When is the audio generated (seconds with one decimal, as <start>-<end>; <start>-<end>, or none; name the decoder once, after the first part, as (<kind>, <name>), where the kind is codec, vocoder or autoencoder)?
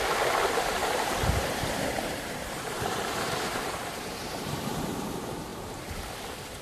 0.8-4.8 (vocoder, BigVGAN v2); 5.5-6.0